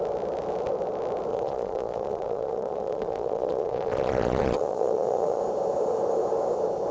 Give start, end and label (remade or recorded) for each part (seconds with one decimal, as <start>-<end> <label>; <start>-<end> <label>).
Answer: 0.0-1.3 recorded; 1.3-5.4 remade; 5.4-6.9 recorded